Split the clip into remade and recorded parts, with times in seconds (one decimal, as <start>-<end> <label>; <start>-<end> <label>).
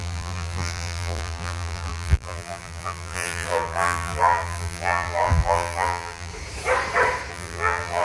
0.0-6.3 remade; 6.3-7.3 recorded; 7.3-8.0 remade